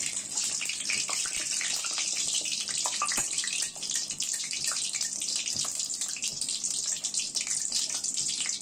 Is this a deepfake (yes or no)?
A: no